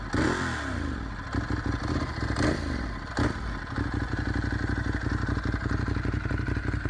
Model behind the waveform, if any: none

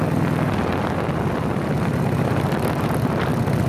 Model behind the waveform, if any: none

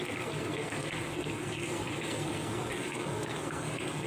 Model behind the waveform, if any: codec, SNAC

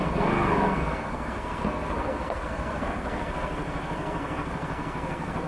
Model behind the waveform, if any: codec, SNAC